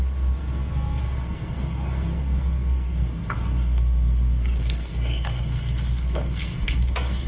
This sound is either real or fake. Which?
fake